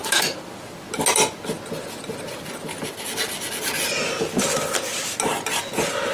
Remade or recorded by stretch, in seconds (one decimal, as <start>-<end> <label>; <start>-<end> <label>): 0.0-6.1 recorded